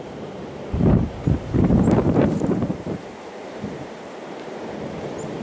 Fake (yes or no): yes